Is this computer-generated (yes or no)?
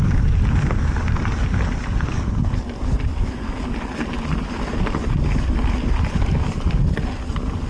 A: no